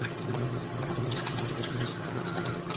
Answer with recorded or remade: remade